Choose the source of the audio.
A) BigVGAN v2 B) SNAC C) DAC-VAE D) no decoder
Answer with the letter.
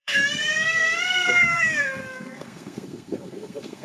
B